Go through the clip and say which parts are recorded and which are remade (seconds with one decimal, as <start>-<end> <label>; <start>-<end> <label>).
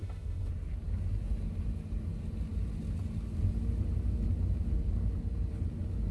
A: 0.0-0.5 remade; 0.5-6.1 recorded